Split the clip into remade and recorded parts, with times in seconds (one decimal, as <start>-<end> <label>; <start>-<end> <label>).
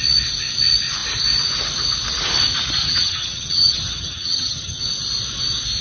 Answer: 0.0-2.8 recorded; 2.8-4.8 remade; 4.8-5.8 recorded